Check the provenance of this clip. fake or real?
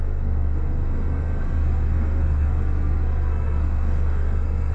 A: fake